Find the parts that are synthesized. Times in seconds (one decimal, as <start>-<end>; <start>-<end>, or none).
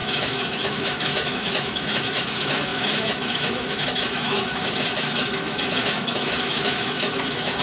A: 0.0-7.6